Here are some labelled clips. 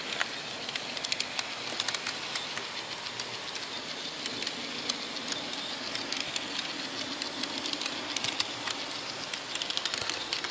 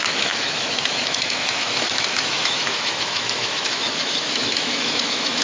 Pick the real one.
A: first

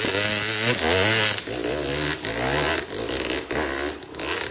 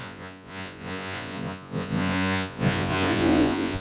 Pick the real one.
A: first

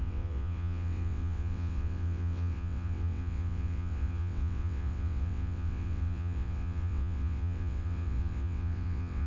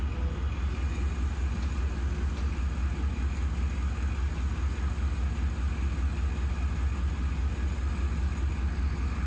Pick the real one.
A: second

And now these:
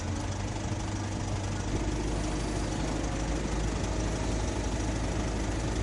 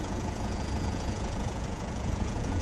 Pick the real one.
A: first